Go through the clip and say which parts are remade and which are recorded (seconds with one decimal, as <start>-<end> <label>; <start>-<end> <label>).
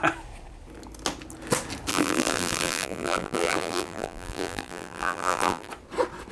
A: 0.0-1.9 recorded; 1.9-5.7 remade; 5.7-6.3 recorded